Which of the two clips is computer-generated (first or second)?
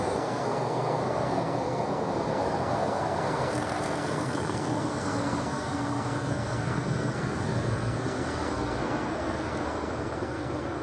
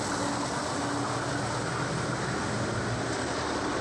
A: first